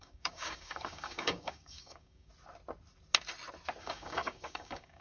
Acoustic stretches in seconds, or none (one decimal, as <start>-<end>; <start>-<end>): 2.3-3.8